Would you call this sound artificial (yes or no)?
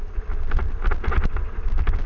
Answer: no